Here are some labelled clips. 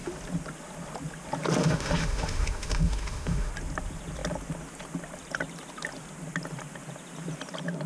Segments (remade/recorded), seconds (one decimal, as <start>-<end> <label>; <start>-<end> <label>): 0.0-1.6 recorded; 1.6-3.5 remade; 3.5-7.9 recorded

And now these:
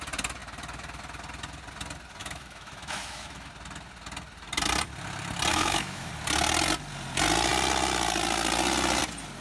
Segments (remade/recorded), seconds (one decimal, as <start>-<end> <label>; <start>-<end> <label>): 0.0-2.2 recorded; 2.2-3.5 remade; 3.5-5.5 recorded; 5.5-6.1 remade; 6.1-9.4 recorded

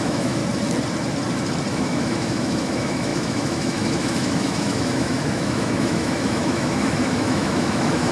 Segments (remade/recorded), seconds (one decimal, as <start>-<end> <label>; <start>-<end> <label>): 0.0-0.4 remade; 0.4-1.7 recorded; 1.7-8.1 remade

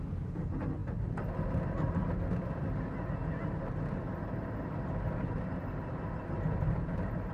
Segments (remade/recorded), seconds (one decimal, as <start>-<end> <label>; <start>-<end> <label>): 0.0-7.3 recorded

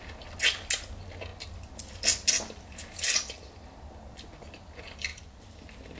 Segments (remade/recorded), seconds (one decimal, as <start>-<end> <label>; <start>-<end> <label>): 0.0-6.0 recorded

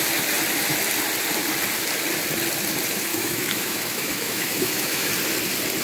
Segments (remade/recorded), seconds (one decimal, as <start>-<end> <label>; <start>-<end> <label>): 0.0-3.1 recorded; 3.1-5.1 remade; 5.1-5.8 recorded

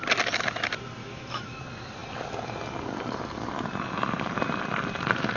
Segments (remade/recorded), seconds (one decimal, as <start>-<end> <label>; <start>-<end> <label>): 0.0-1.0 recorded; 1.0-1.6 remade; 1.6-5.4 recorded

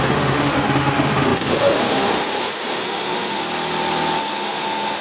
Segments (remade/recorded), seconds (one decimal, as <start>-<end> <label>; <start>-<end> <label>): 0.0-3.4 remade; 3.4-4.2 recorded; 4.2-5.0 remade